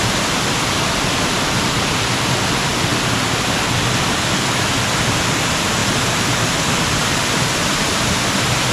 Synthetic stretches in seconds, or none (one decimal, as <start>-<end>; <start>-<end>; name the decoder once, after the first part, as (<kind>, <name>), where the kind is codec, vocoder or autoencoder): 0.7-2.9 (vocoder, BigVGAN v2); 4.4-8.7